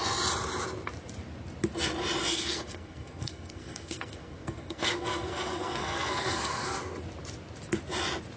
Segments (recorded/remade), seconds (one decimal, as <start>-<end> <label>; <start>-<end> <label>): 0.0-2.3 recorded; 2.3-6.8 remade; 6.8-8.4 recorded